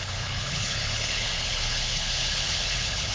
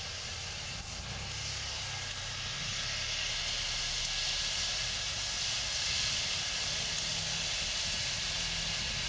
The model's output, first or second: first